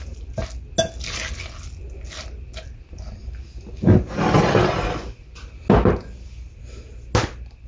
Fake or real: real